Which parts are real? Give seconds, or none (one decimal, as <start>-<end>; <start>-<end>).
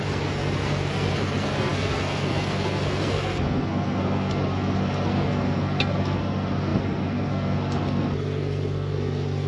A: none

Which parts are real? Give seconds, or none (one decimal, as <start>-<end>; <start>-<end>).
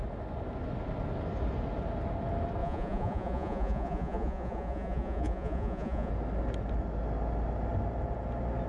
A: 0.0-2.6; 6.1-8.7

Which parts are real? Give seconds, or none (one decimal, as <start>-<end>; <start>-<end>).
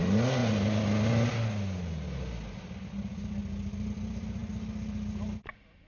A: 0.0-5.9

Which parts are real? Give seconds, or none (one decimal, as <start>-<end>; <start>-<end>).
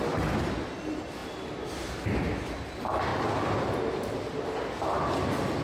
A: 0.0-5.6